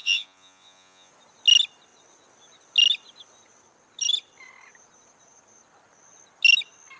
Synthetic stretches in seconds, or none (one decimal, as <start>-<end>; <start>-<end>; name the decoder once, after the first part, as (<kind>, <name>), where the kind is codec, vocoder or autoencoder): 0.0-1.1 (vocoder, Vocos)